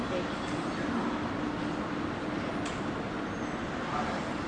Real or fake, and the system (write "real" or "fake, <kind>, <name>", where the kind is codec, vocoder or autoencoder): real